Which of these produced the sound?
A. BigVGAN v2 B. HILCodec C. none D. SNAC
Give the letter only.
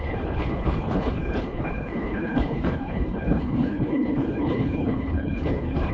B